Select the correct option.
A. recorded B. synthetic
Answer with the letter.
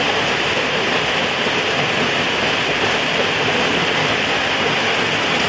A